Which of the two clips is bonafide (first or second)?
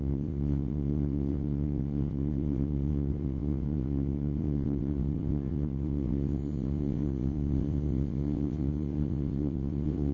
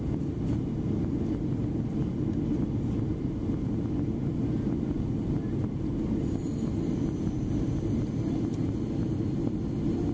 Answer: second